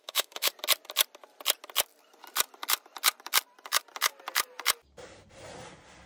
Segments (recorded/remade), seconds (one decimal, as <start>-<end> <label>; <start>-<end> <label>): 0.0-0.5 remade; 0.5-6.1 recorded

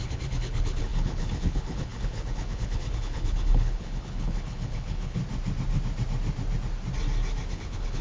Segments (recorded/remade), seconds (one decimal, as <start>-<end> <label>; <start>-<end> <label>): 0.0-5.2 remade; 5.2-7.5 recorded; 7.5-8.0 remade

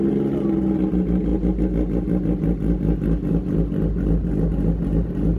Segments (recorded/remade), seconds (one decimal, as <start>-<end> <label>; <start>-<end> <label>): 0.0-5.4 recorded